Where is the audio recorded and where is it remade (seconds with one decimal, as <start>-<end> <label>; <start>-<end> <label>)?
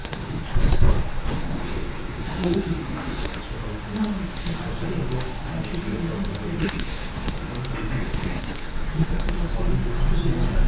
0.0-3.4 remade; 3.4-6.6 recorded; 6.6-7.5 remade; 7.5-8.0 recorded; 8.0-9.3 remade; 9.3-10.7 recorded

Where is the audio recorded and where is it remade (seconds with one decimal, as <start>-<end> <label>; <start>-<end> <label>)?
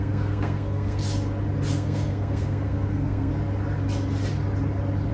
0.0-1.0 remade; 1.0-1.7 recorded; 1.7-3.3 remade; 3.3-5.1 recorded